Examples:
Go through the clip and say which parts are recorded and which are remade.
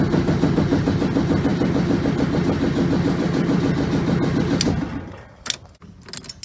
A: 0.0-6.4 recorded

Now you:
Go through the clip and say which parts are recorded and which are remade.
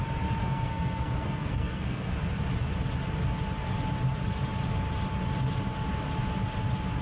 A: 0.0-0.4 recorded; 0.4-2.1 remade; 2.1-7.0 recorded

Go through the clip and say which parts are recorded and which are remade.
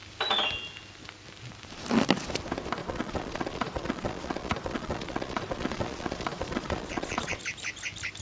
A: 0.0-2.8 recorded; 2.8-7.4 remade; 7.4-8.2 recorded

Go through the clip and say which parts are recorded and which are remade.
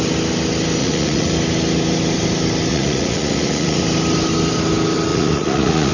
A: 0.0-0.8 recorded; 0.8-1.3 remade; 1.3-2.7 recorded; 2.7-3.8 remade; 3.8-5.1 recorded; 5.1-5.9 remade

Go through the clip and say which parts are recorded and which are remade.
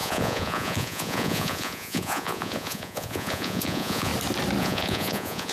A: 0.0-4.1 remade; 4.1-4.6 recorded; 4.6-5.5 remade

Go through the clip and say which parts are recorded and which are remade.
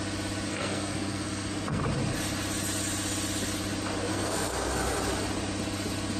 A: 0.0-0.5 recorded; 0.5-1.8 remade; 1.8-4.1 recorded; 4.1-4.7 remade; 4.7-6.2 recorded